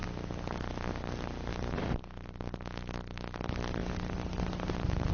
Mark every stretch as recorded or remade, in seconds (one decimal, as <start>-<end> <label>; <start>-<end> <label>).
0.0-5.1 recorded